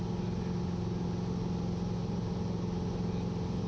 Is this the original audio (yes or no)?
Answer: yes